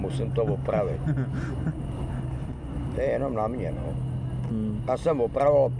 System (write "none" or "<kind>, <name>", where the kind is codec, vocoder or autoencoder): none